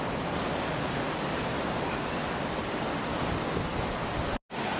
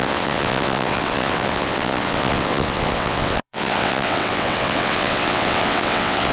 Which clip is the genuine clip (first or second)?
first